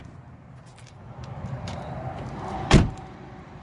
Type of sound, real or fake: fake